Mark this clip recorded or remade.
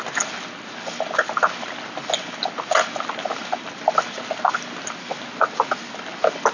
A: recorded